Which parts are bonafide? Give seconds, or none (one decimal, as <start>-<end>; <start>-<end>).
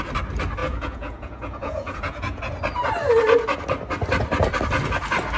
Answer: 0.0-0.6; 2.4-5.4